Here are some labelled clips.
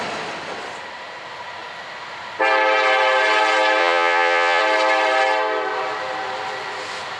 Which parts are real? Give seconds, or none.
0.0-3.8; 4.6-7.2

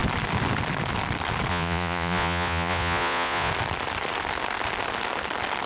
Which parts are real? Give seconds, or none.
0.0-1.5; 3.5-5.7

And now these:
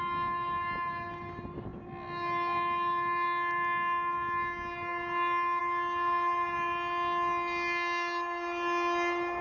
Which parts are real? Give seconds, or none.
0.0-9.4

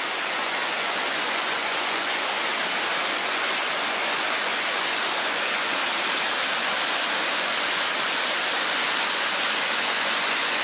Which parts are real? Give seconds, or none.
2.5-3.1; 5.8-6.5

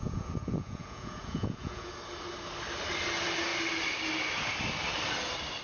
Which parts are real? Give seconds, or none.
1.9-5.6

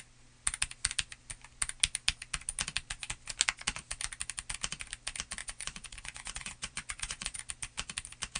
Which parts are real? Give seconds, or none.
0.0-5.4; 7.4-8.4